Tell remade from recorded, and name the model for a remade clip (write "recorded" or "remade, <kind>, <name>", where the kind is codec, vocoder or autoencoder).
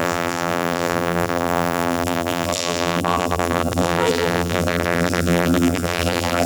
remade, vocoder, BigVGAN v2